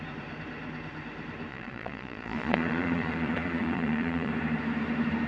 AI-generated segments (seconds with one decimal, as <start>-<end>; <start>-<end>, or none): 1.5-4.3